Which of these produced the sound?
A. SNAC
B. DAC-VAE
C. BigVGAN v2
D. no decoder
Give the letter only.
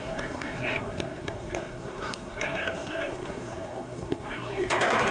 A